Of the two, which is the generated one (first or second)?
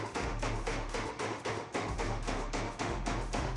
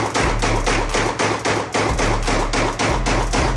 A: first